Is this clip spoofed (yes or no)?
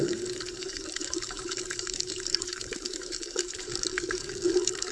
yes